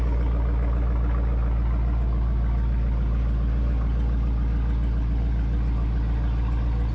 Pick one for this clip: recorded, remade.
recorded